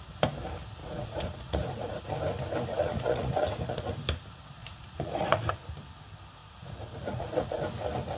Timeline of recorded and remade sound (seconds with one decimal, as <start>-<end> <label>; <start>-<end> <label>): 0.0-0.8 recorded; 0.8-2.0 remade; 2.0-2.7 recorded; 2.7-3.8 remade; 3.8-4.6 recorded; 4.6-5.5 remade; 5.5-6.4 recorded; 6.4-7.6 remade; 7.6-8.2 recorded